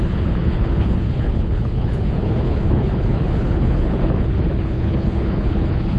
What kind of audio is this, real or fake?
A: fake